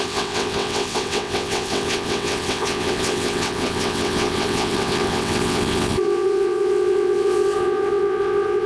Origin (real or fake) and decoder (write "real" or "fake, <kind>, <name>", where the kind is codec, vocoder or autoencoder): fake, vocoder, WaveNeXt